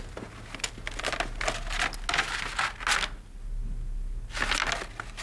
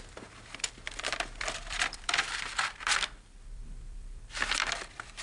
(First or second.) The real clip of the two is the first